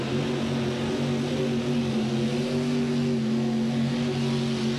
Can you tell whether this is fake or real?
real